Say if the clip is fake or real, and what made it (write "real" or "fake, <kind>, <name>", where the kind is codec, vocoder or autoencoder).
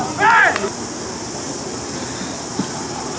real